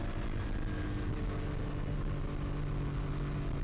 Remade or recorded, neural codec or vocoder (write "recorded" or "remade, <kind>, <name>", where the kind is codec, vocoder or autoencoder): recorded